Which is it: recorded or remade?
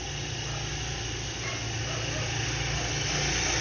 recorded